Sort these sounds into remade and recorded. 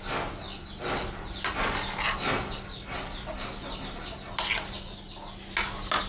recorded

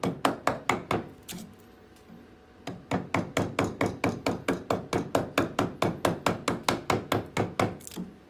recorded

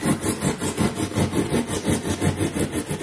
recorded